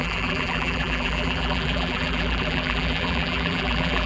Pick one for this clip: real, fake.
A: fake